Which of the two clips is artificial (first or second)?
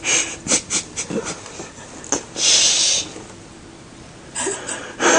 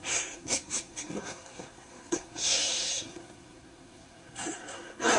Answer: second